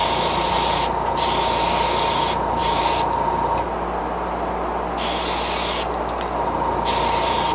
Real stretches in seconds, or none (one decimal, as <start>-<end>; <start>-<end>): 0.0-7.5